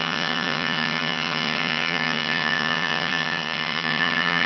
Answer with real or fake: fake